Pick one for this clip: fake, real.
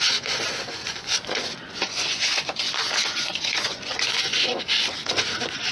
fake